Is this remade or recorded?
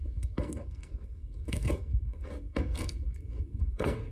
remade